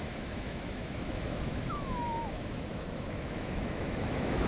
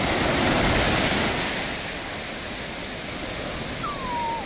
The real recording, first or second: second